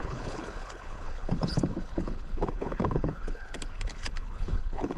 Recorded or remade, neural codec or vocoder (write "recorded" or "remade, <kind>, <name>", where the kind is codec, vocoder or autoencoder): remade, codec, HILCodec